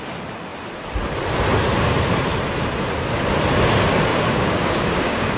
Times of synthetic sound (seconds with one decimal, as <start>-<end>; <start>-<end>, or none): 4.1-5.4